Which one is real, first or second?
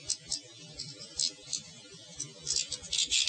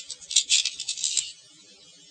first